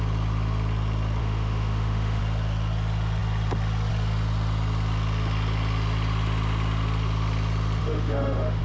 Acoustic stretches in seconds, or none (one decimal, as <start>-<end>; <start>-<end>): 0.0-1.2; 2.2-7.8